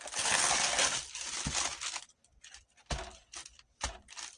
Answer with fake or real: real